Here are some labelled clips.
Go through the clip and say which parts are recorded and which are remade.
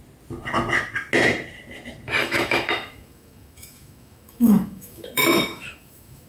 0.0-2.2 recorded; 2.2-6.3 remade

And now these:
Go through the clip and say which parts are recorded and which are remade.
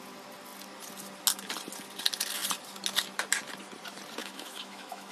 0.0-4.2 recorded; 4.2-5.1 remade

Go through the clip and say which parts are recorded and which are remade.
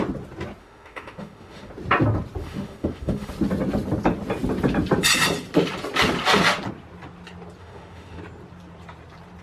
0.0-0.6 recorded; 0.6-1.7 remade; 1.7-2.4 recorded; 2.4-3.3 remade; 3.3-7.6 recorded; 7.6-8.2 remade; 8.2-9.4 recorded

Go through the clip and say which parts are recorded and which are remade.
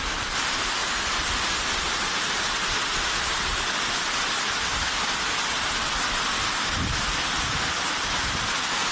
0.0-8.9 recorded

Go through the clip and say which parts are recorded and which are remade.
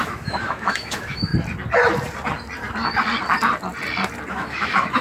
0.0-1.3 remade; 1.3-4.3 recorded; 4.3-5.0 remade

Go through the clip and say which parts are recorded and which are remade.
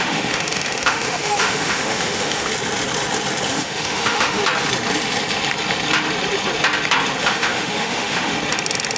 0.0-2.5 remade; 2.5-3.5 recorded; 3.5-4.4 remade; 4.4-7.2 recorded; 7.2-8.3 remade; 8.3-9.0 recorded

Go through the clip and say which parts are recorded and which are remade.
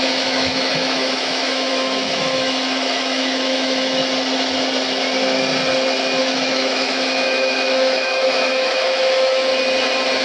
0.0-4.0 remade; 4.0-6.2 recorded; 6.2-9.5 remade; 9.5-10.2 recorded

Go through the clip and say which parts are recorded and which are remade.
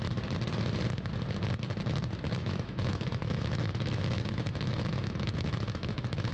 0.0-2.4 recorded; 2.4-6.3 remade